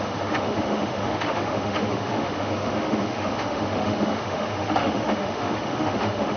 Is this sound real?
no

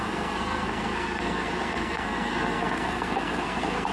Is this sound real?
no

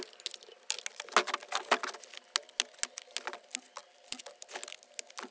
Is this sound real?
yes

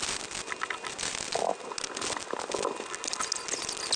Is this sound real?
yes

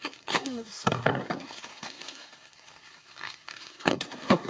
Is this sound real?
no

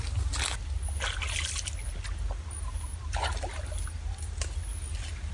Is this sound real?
yes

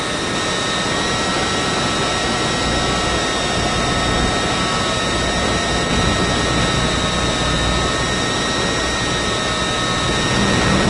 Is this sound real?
yes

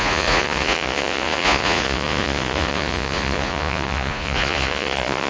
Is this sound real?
no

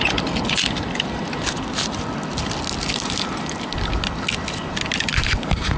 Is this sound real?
yes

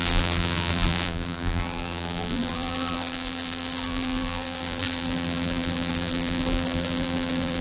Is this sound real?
no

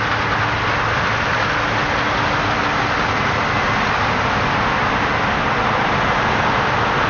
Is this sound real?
yes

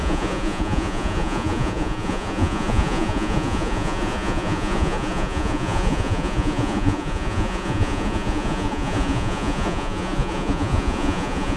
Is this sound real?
no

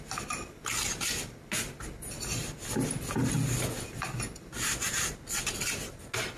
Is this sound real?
yes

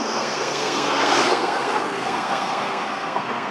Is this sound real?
no